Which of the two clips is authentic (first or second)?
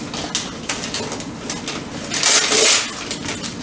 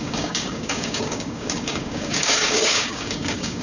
first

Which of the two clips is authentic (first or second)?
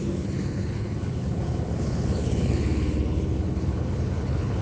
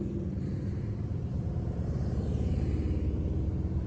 second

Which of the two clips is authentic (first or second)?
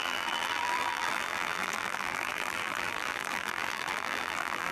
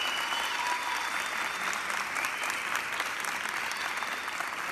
second